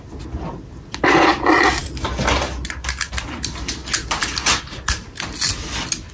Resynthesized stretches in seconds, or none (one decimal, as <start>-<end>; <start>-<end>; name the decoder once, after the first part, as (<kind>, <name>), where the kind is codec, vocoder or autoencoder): none